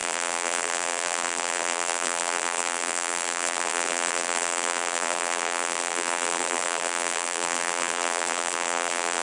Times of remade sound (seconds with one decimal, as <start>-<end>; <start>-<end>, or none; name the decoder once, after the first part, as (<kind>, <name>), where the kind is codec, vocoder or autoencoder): 0.0-9.2 (vocoder, BigVGAN v2)

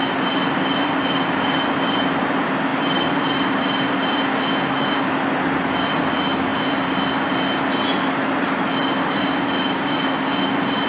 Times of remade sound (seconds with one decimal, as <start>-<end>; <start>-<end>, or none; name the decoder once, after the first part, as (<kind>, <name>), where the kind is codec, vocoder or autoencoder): none